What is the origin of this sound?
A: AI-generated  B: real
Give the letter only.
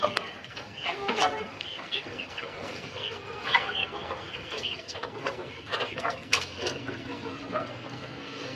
A